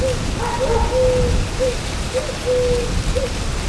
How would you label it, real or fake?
real